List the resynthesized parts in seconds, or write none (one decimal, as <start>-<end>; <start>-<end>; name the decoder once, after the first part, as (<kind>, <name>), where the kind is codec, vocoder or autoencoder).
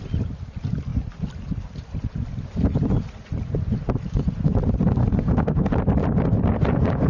5.0-5.7 (codec, SNAC)